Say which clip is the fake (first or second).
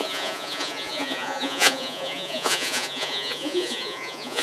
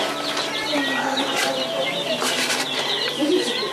first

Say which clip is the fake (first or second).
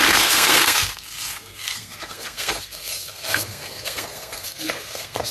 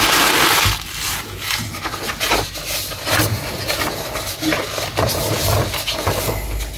first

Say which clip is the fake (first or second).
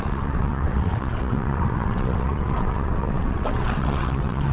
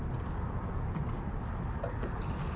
first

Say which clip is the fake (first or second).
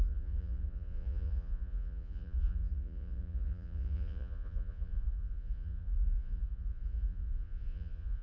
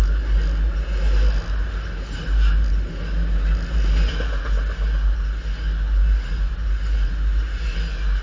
first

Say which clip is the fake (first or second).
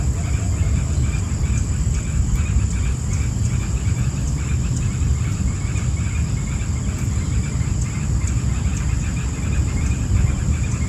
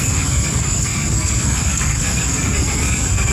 second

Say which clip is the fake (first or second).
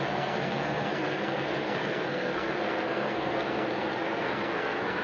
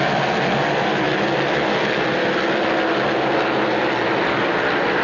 first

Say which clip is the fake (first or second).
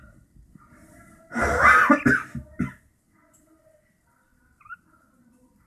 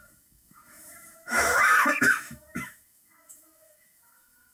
second